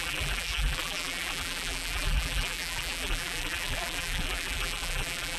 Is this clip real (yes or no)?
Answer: no